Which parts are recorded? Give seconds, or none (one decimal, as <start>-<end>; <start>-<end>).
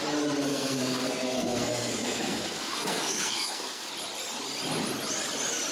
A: 0.0-0.5; 3.9-5.7